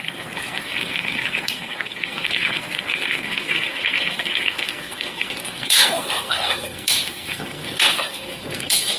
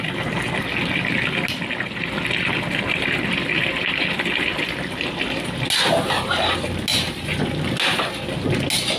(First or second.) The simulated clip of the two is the first